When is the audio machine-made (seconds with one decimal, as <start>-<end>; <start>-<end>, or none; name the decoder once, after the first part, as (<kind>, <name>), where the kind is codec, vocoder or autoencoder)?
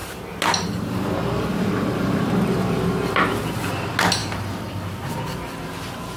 none